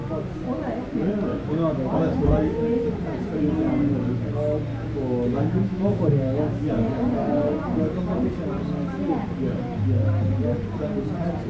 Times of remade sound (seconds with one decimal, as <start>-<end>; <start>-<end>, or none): 1.3-1.9; 4.7-6.7